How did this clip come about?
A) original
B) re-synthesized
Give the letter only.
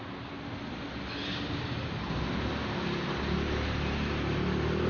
A